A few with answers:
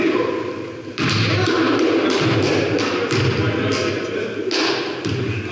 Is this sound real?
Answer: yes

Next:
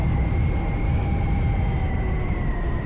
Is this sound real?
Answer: yes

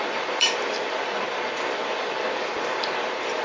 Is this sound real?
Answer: no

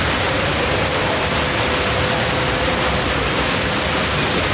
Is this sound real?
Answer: yes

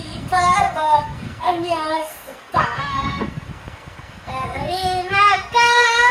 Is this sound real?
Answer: no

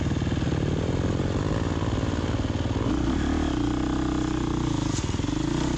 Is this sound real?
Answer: yes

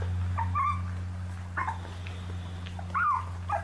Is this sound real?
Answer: yes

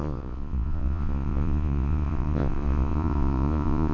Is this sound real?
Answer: no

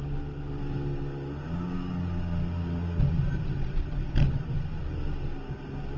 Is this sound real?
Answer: yes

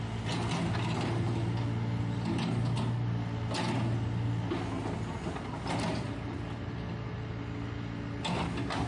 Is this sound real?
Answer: yes